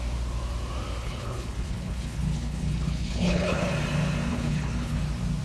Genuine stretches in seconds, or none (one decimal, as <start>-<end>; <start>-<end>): 0.0-1.0; 3.7-4.3; 5.0-5.4